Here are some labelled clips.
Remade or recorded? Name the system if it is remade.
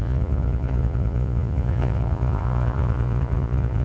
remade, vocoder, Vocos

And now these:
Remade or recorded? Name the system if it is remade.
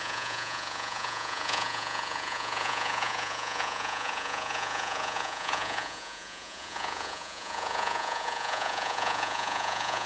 remade, vocoder, Vocos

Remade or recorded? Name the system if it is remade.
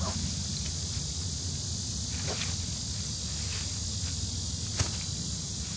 recorded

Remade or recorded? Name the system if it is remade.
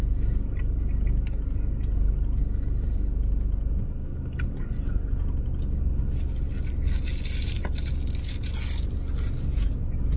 recorded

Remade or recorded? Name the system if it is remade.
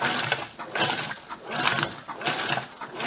recorded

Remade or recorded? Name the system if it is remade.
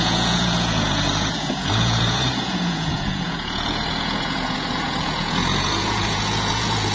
remade, vocoder, Vocos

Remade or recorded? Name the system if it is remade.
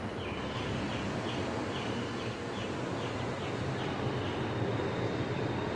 recorded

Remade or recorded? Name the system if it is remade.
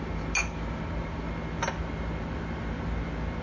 recorded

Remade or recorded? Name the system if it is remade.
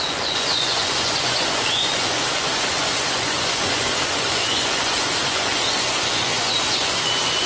remade, vocoder, Vocos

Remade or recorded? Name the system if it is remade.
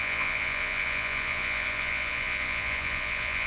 remade, vocoder, Vocos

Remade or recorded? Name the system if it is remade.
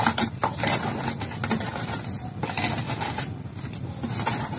recorded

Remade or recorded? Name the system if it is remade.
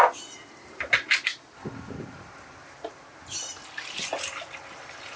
recorded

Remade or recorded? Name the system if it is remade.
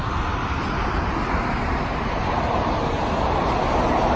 recorded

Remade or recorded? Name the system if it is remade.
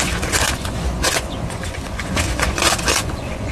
remade, vocoder, Vocos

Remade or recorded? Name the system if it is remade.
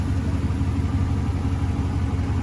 recorded